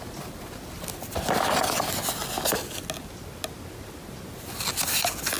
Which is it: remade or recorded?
recorded